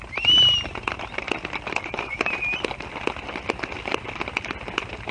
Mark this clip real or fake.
real